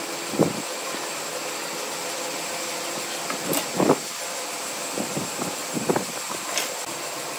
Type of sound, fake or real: real